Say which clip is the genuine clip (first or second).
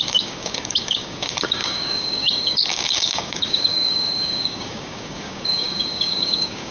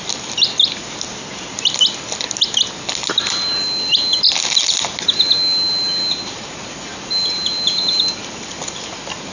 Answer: second